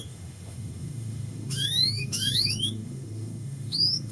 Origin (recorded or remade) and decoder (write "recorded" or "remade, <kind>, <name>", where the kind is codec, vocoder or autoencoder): remade, autoencoder, DAC-VAE